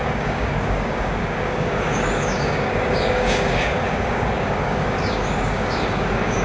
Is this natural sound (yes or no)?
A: no